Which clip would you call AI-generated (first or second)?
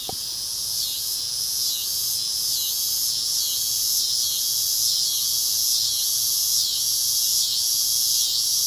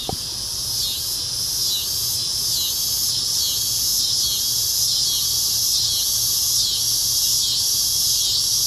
first